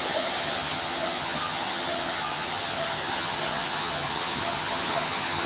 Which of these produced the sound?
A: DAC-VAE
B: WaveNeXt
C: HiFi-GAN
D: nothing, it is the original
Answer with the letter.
C